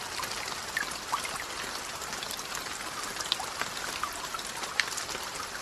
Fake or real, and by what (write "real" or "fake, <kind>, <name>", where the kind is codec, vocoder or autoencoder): real